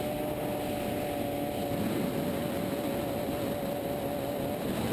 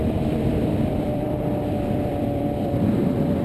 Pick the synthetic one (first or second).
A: second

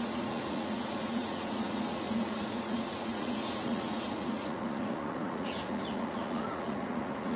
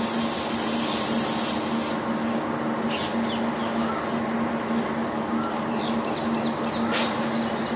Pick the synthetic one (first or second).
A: first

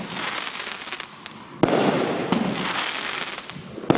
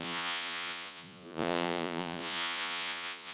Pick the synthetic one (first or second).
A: second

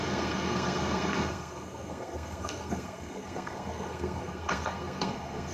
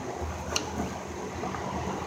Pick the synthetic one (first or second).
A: first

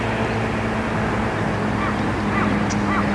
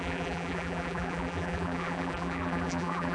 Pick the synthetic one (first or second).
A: second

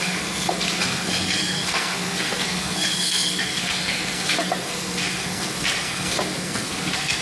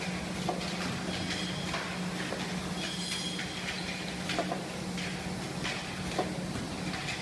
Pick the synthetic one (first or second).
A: first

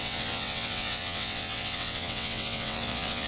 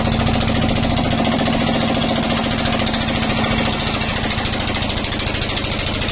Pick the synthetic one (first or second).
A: first